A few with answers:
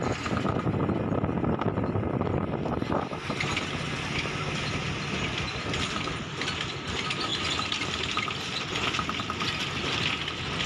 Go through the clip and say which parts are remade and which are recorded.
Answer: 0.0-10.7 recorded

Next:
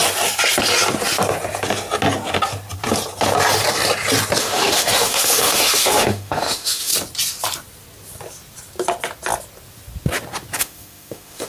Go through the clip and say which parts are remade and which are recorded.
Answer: 0.0-4.4 recorded; 4.4-6.9 remade; 6.9-10.6 recorded; 10.6-11.5 remade

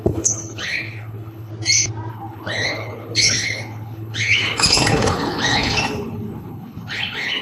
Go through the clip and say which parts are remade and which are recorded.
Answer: 0.0-1.5 remade; 1.5-2.1 recorded; 2.1-7.4 remade

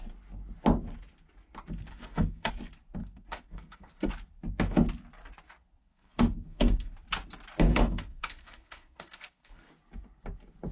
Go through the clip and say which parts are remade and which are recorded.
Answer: 0.0-1.9 recorded; 1.9-2.5 remade; 2.5-3.0 recorded; 3.0-4.1 remade; 4.1-5.8 recorded; 5.8-6.9 remade; 6.9-7.7 recorded; 7.7-9.7 remade; 9.7-10.7 recorded